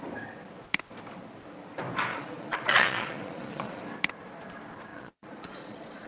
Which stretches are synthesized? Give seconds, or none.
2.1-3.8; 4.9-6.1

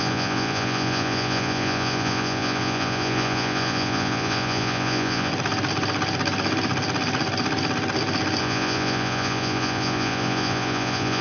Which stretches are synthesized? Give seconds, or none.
0.0-5.3; 8.4-11.2

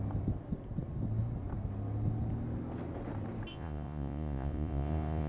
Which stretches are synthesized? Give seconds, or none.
3.5-5.3

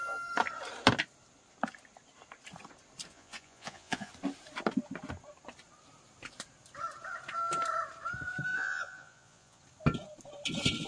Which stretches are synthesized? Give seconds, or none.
3.1-4.1; 8.5-9.6

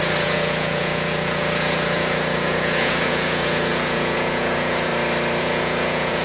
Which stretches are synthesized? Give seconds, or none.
0.0-4.9; 5.4-6.2

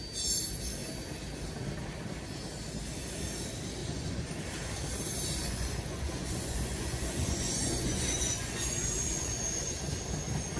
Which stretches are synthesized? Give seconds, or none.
3.8-4.3; 5.4-9.9

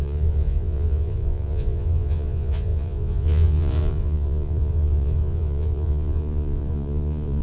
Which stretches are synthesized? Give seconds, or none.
0.0-7.4